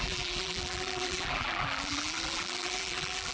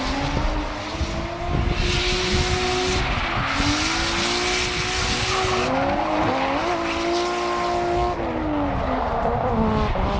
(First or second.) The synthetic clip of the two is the first